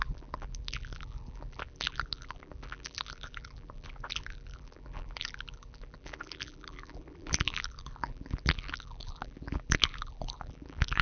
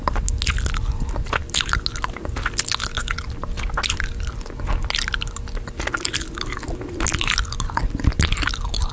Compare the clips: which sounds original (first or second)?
second